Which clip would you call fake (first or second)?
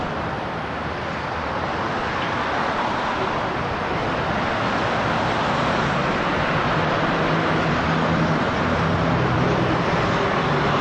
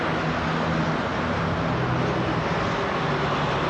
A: first